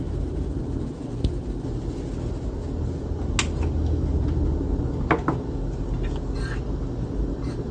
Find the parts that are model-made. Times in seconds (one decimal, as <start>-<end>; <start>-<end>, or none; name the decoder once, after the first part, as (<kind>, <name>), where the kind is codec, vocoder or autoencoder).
none